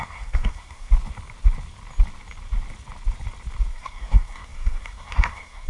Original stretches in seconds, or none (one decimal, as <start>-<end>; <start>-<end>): 0.9-3.7